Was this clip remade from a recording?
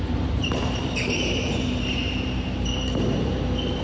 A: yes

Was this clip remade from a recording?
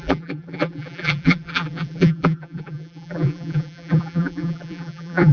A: yes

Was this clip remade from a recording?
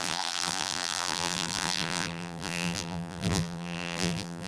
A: yes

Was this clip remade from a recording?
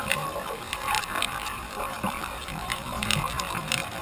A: yes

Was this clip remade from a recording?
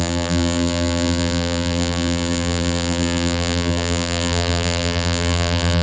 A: yes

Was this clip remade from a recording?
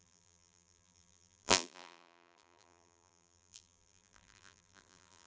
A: yes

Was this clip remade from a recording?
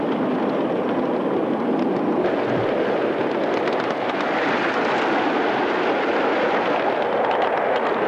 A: no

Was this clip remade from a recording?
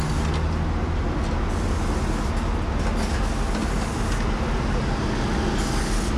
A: no